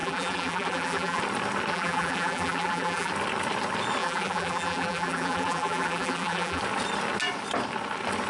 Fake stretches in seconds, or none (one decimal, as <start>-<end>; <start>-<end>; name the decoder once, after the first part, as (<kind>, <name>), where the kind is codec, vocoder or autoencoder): 0.0-1.2 (vocoder, BigVGAN v2); 1.7-3.1; 4.0-6.6